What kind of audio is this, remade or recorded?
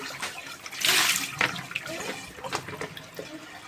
recorded